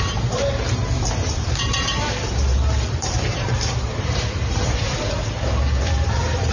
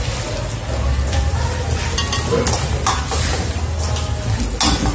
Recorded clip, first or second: second